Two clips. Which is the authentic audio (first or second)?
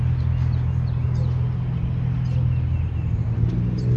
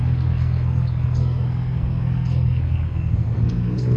first